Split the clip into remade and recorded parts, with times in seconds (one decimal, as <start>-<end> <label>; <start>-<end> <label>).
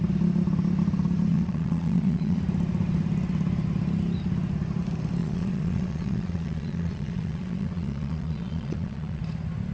0.0-1.3 recorded; 1.3-2.4 remade; 2.4-5.2 recorded; 5.2-9.2 remade; 9.2-9.7 recorded